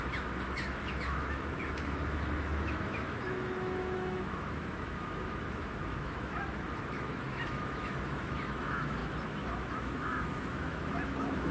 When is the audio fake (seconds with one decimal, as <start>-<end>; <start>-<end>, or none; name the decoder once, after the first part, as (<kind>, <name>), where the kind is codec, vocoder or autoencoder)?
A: 0.0-11.5 (autoencoder, DAC-VAE)

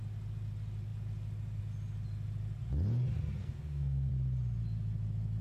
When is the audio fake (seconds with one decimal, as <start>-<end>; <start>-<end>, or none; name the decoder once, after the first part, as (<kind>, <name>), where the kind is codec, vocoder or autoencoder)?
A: 3.4-4.1 (codec, SNAC)

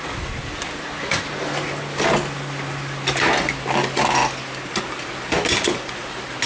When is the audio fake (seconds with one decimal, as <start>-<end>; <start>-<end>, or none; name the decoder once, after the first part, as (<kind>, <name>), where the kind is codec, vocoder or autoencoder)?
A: none

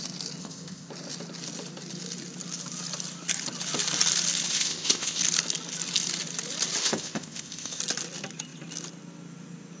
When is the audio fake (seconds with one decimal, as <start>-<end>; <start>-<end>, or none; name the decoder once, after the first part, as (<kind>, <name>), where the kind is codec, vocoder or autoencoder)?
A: 0.4-0.9 (codec, ZipCodec); 4.5-5.2; 6.8-7.8

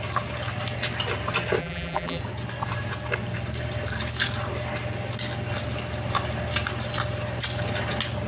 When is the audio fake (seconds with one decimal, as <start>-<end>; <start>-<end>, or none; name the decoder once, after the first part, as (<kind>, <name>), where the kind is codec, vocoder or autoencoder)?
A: 1.6-2.2 (vocoder, BigVGAN v2)

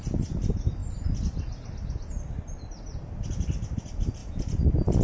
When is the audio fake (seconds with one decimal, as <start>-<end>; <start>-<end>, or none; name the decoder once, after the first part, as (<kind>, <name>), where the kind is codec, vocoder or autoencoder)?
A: none

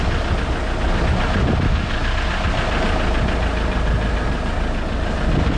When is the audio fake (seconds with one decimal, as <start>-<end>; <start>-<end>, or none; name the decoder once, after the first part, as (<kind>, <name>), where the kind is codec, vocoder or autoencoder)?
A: none